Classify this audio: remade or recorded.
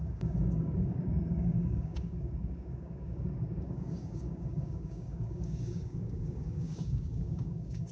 remade